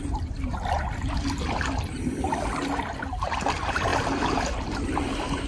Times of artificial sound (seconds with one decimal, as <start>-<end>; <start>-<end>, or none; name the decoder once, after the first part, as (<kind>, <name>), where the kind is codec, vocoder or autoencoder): none

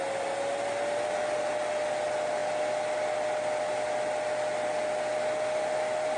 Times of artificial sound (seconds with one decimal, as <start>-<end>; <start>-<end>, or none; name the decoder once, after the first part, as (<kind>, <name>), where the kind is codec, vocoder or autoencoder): none

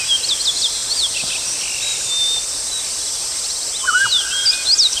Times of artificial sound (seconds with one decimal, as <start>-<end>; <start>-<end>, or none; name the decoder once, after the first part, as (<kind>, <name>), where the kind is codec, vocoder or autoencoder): none

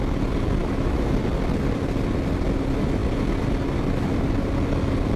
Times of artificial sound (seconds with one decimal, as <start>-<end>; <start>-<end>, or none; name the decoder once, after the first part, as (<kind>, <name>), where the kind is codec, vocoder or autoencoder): 0.6-1.1 (autoencoder, DAC-VAE)

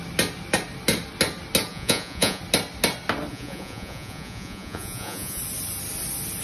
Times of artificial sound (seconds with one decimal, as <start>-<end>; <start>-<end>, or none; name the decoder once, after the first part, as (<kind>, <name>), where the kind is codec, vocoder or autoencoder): 1.7-2.4 (vocoder, Vocos); 3.3-5.4

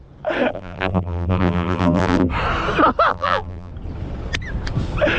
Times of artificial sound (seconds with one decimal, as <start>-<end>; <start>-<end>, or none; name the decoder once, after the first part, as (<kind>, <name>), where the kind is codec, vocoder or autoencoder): 0.5-2.3 (vocoder, BigVGAN v2); 3.1-3.7

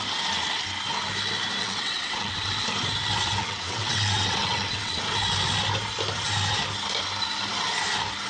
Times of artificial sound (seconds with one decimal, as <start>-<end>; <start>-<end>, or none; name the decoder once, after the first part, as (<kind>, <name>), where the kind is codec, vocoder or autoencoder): 1.6-2.5 (vocoder, WaveNeXt); 3.4-5.0